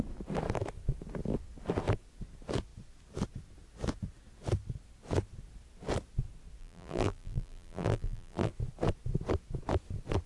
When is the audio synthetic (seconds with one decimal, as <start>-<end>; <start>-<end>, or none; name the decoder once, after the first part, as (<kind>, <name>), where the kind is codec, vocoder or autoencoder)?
6.6-8.5 (vocoder, BigVGAN v2)